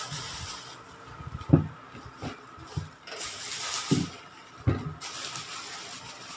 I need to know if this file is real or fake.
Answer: real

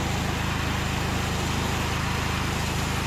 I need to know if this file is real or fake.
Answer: real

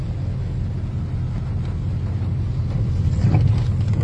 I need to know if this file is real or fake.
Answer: real